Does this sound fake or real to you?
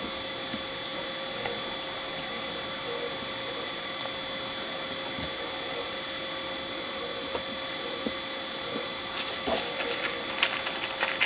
real